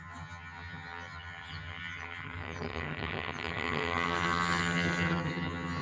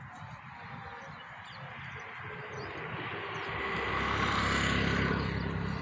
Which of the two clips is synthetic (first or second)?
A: first